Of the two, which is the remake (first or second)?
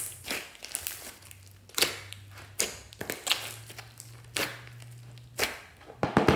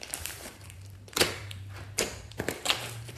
second